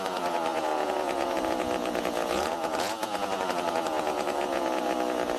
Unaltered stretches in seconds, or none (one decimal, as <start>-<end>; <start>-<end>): none